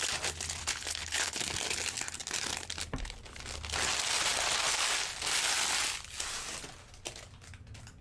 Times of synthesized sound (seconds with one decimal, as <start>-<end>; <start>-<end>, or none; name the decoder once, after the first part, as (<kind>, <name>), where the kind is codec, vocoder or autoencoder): 0.6-1.4 (codec, HILCodec)